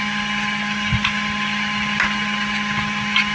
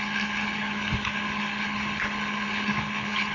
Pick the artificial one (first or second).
second